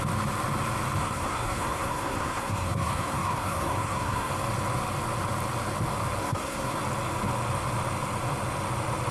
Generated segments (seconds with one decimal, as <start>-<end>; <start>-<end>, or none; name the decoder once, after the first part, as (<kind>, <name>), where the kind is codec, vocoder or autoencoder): 1.0-4.3 (codec, SNAC); 6.2-6.8